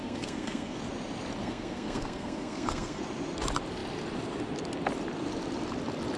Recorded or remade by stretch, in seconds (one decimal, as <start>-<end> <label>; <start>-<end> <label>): 0.0-0.8 remade; 0.8-1.4 recorded; 1.4-3.0 remade; 3.0-6.2 recorded